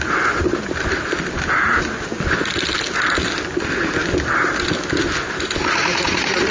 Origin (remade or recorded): recorded